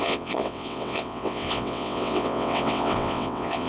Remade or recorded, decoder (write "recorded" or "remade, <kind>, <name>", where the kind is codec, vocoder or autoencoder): remade, vocoder, WaveNeXt